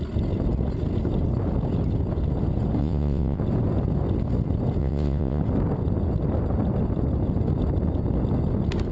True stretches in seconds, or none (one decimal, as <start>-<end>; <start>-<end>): 0.0-2.8; 3.4-4.8; 5.4-8.9